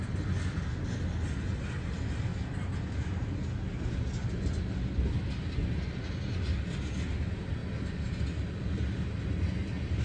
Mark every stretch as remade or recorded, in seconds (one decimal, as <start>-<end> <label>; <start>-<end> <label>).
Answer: 0.0-10.0 recorded